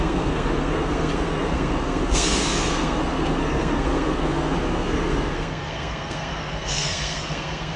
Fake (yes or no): yes